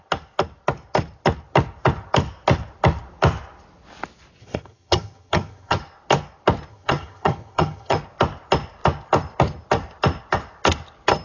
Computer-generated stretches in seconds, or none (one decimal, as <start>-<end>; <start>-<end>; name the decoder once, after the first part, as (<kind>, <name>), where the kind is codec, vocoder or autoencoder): 4.4-5.8 (vocoder, HiFi-GAN); 6.7-8.0

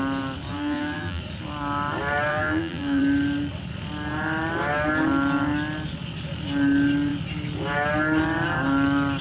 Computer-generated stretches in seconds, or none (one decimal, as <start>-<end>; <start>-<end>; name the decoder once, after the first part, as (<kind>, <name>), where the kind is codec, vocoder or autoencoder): 0.5-1.2 (vocoder, BigVGAN v2); 2.3-3.0

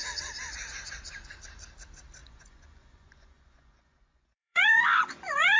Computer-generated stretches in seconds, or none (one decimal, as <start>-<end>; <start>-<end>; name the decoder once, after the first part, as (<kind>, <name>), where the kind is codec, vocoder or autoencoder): 2.2-5.6 (vocoder, Vocos)